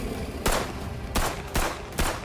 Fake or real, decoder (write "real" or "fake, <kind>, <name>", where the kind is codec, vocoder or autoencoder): real